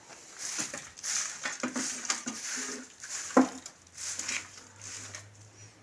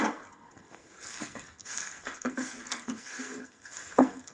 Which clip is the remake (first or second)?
second